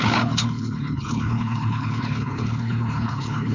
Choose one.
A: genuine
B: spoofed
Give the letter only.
B